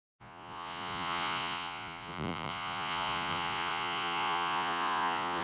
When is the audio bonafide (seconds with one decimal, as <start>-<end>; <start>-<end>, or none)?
none